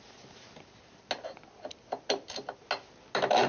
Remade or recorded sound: recorded